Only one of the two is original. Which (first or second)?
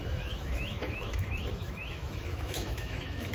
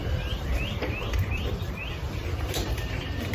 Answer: second